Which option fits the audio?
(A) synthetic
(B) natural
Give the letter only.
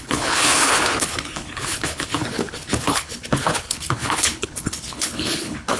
A